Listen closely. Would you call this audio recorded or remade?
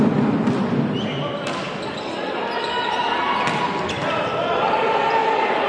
recorded